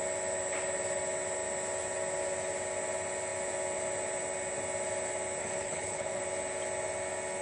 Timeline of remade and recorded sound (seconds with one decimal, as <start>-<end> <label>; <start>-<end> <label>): 0.0-5.4 recorded; 5.4-6.2 remade; 6.2-7.4 recorded

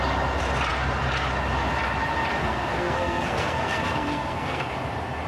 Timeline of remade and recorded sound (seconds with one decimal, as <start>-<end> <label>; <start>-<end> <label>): 0.0-2.4 recorded; 2.4-4.7 remade; 4.7-5.3 recorded

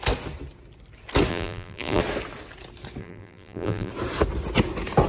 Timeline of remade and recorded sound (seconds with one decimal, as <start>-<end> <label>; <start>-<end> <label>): 0.0-1.3 recorded; 1.3-2.0 remade; 2.0-3.0 recorded; 3.0-3.9 remade; 3.9-5.1 recorded

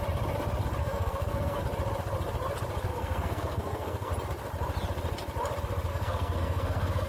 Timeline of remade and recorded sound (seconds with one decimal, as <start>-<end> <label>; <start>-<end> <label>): 0.0-0.8 recorded; 0.8-1.6 remade; 1.6-2.9 recorded; 2.9-4.1 remade; 4.1-5.9 recorded; 5.9-7.1 remade

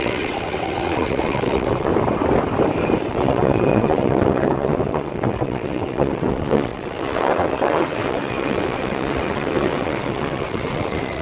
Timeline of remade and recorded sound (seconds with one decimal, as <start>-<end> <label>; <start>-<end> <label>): 0.0-1.9 remade; 1.9-3.1 recorded; 3.1-11.2 remade